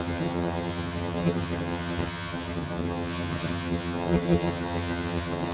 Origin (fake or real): fake